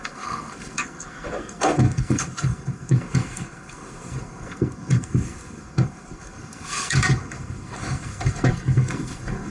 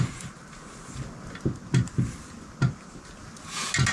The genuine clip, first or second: second